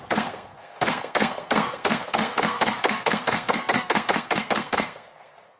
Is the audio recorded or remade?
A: remade